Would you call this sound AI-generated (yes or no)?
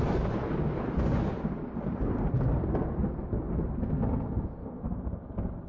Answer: no